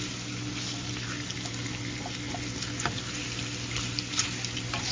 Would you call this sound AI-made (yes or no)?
no